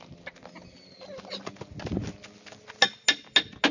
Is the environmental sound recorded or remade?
recorded